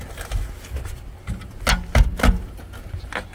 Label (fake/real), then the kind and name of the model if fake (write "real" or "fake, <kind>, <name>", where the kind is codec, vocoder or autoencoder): real